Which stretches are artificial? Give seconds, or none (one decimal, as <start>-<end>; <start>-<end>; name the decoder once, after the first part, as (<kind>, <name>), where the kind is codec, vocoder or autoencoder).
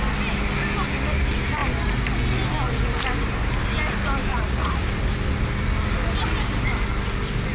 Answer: 4.3-4.8 (vocoder, Vocos)